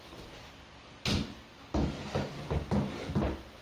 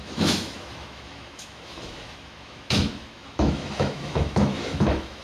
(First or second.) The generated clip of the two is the second